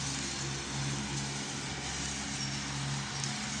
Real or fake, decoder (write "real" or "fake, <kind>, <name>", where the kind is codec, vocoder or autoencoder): real